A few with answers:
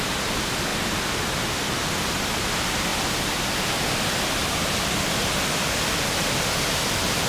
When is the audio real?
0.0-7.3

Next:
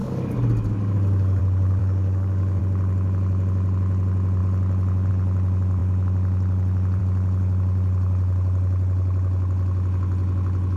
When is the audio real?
1.4-1.8; 2.6-10.8

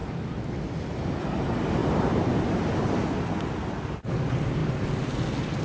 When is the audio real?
0.0-5.6

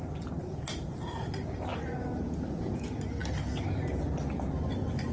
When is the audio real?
0.0-5.1